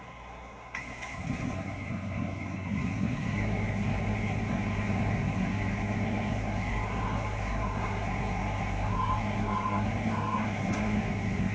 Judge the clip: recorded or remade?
remade